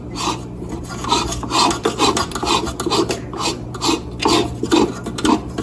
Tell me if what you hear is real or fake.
real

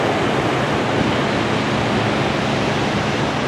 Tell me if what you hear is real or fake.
fake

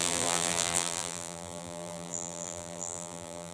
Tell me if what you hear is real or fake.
fake